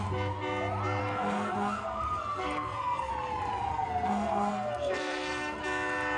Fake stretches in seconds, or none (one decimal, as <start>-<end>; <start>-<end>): 1.0-3.1; 3.7-5.6